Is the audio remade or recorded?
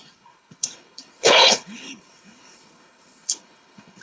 remade